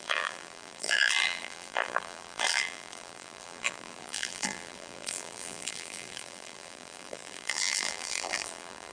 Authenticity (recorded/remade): remade